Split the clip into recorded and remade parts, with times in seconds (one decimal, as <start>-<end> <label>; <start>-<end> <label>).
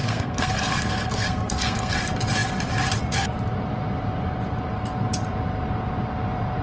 0.0-2.0 remade; 2.0-6.6 recorded